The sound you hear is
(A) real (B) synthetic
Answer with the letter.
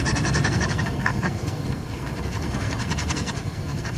B